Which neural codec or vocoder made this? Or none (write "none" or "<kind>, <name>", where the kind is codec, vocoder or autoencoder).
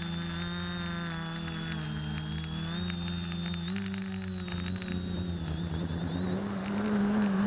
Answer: none